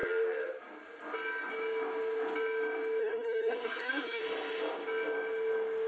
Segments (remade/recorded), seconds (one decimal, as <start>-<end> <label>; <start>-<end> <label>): 0.0-3.0 recorded; 3.0-4.2 remade; 4.2-5.9 recorded